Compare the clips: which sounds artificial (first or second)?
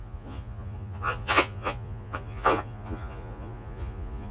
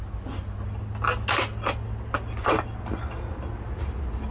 first